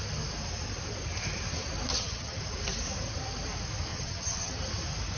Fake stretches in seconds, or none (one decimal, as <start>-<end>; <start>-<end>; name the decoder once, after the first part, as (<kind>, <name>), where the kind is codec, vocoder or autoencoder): 1.9-2.4 (vocoder, HiFi-GAN); 3.9-4.6